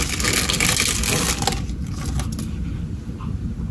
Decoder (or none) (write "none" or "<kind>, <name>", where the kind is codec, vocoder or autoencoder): none